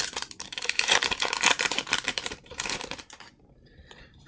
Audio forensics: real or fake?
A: fake